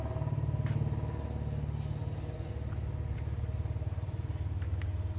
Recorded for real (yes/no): yes